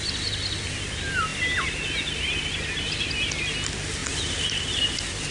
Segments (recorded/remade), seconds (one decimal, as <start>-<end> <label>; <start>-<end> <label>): 0.0-5.3 recorded